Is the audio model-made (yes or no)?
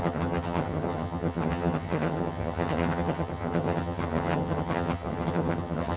yes